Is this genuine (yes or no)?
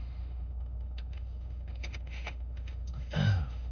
no